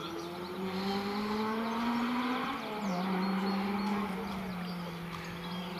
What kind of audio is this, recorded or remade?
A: recorded